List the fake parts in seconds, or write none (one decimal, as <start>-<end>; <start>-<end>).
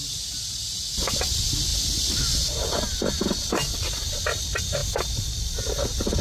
none